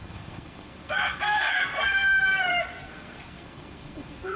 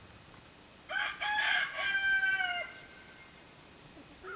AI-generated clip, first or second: first